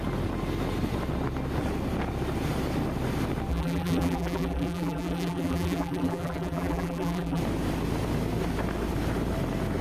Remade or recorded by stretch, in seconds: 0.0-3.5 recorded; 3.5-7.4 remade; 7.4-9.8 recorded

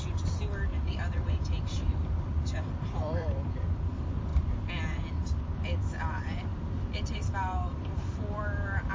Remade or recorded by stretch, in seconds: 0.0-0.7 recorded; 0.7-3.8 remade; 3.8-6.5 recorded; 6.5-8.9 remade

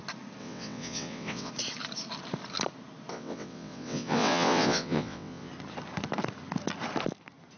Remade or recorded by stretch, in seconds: 0.0-0.4 recorded; 0.4-1.5 remade; 1.5-3.1 recorded; 3.1-5.5 remade; 5.5-7.6 recorded